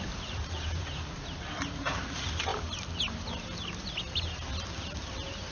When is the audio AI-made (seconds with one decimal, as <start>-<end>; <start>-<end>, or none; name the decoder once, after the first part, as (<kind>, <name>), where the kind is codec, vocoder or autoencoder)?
0.0-2.5 (vocoder, BigVGAN v2)